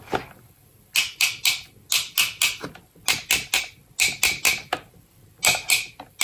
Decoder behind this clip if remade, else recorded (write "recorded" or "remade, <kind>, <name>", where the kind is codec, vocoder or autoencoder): recorded